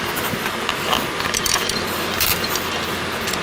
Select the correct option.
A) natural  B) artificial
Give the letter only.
B